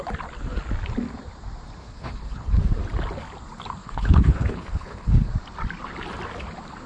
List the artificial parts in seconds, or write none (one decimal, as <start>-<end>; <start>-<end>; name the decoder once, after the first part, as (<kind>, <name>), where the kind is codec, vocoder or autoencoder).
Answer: 1.8-2.6 (codec, HILCodec); 3.8-5.3